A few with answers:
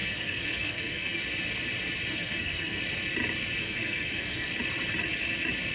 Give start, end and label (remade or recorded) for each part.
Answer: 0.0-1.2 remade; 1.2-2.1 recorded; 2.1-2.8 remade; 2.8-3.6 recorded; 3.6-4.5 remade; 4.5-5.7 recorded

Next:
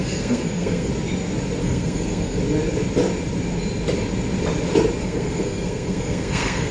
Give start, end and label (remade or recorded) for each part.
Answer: 0.0-0.9 remade; 0.9-1.6 recorded; 1.6-2.4 remade; 2.4-5.0 recorded; 5.0-6.7 remade

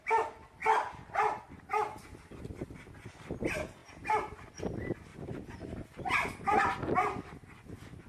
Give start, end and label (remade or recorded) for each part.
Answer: 0.0-5.1 recorded; 5.1-6.0 remade; 6.0-8.1 recorded